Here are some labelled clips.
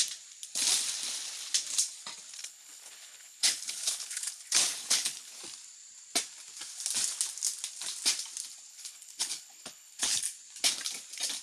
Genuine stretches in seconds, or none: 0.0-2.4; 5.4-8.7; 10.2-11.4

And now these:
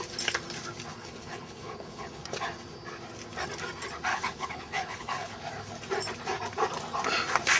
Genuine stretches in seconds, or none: 0.0-0.9; 2.2-4.1; 5.4-7.6

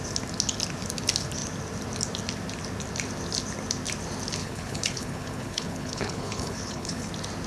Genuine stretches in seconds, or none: 0.0-4.4; 7.1-7.5

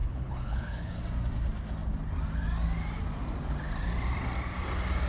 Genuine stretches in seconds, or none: 1.0-5.1

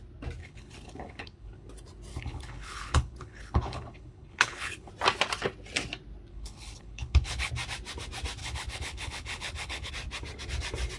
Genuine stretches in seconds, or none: 0.0-0.4; 1.7-2.1; 4.9-6.3; 7.5-8.4; 9.9-11.0